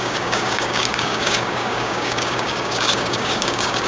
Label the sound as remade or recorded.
remade